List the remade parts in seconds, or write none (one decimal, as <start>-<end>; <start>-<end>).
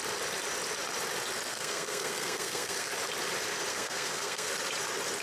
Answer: 1.5-2.9; 3.7-4.5